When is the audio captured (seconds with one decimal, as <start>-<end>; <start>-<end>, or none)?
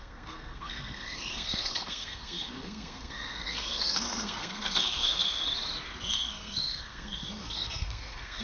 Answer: 5.4-6.1